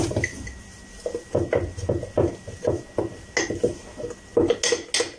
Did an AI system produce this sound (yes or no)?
no